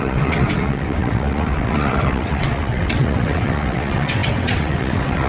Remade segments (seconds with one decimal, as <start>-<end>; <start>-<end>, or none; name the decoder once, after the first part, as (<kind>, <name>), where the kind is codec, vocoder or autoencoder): 0.0-5.3 (vocoder, WaveNeXt)